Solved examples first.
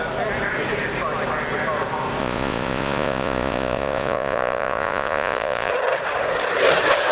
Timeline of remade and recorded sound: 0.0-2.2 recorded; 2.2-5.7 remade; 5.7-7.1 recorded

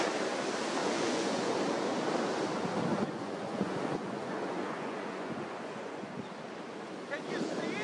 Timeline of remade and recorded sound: 0.0-0.8 recorded; 0.8-1.5 remade; 1.5-2.9 recorded; 2.9-6.2 remade; 6.2-7.8 recorded

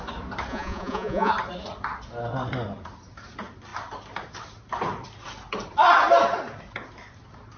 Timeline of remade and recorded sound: 0.0-0.5 recorded; 0.5-1.3 remade; 1.3-7.6 recorded

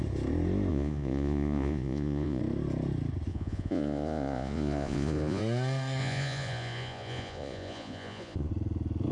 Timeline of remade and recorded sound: 0.0-0.7 recorded; 0.7-2.4 remade; 2.4-3.3 recorded; 3.3-5.4 remade; 5.4-6.0 recorded; 6.0-8.5 remade; 8.5-9.1 recorded

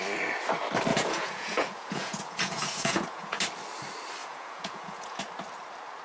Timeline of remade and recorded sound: 0.0-0.9 recorded; 0.9-3.4 remade; 3.4-4.2 recorded; 4.2-5.2 remade; 5.2-6.0 recorded

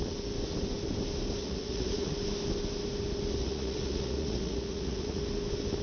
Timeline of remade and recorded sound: 0.0-1.4 recorded; 1.4-2.1 remade; 2.1-3.4 recorded; 3.4-5.2 remade; 5.2-5.8 recorded